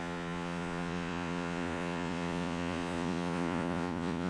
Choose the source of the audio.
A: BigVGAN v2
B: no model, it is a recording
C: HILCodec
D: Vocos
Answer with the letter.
D